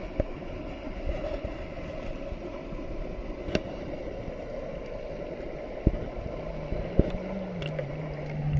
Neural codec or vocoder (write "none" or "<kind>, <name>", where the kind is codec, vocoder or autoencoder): none